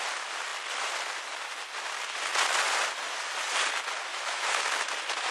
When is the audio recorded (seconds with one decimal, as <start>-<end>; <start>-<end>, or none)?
0.0-4.1; 4.6-5.3